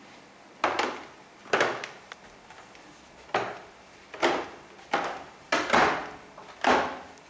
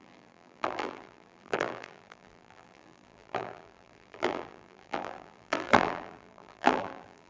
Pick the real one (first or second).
first